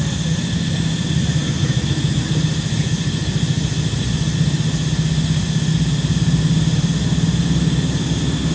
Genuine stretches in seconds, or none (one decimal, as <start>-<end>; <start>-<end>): 0.0-8.5